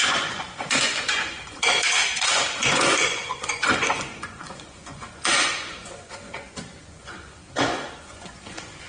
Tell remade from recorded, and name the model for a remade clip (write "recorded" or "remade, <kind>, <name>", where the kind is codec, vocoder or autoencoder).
remade, vocoder, Vocos